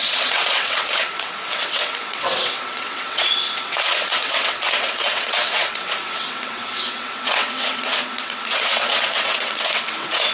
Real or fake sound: fake